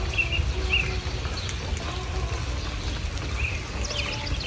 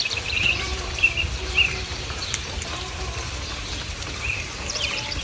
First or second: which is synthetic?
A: second